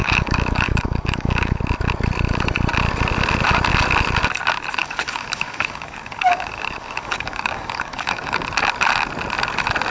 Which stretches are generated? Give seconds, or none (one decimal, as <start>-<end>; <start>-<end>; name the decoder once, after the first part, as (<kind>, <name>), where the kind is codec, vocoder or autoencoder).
0.0-1.6 (codec, DAC); 4.8-8.4